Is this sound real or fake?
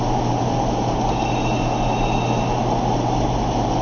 real